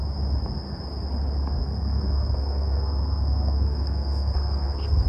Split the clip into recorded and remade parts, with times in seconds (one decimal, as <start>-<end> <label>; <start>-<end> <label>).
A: 0.0-1.6 recorded; 1.6-5.1 remade